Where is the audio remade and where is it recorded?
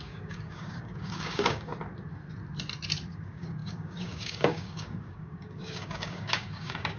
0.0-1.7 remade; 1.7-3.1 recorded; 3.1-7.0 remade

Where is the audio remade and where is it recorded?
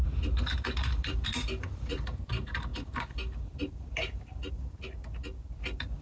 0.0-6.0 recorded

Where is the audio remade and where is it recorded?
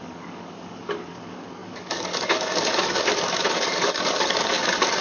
0.0-5.0 remade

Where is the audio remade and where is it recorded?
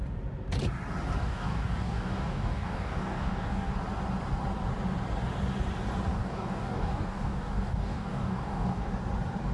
0.0-1.2 recorded; 1.2-3.7 remade; 3.7-6.1 recorded; 6.1-8.9 remade; 8.9-9.5 recorded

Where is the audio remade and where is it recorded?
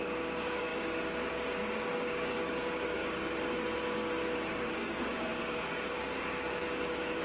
0.0-3.0 remade; 3.0-4.5 recorded; 4.5-7.2 remade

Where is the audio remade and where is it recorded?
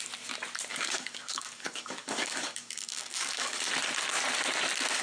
0.0-0.7 recorded; 0.7-3.7 remade; 3.7-5.0 recorded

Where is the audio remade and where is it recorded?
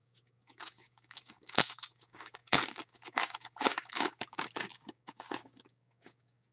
0.0-6.5 remade